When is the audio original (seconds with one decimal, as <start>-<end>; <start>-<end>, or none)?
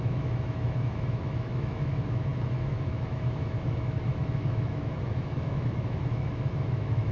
none